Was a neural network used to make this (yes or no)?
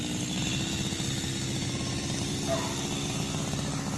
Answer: no